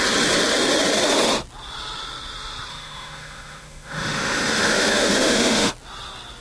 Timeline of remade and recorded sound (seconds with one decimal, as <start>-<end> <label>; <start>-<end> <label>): 0.0-2.7 recorded; 2.7-5.7 remade; 5.7-6.4 recorded